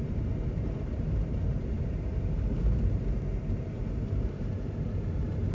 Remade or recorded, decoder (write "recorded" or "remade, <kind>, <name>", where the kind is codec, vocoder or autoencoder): remade, vocoder, BigVGAN v2